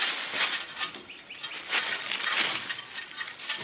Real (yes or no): yes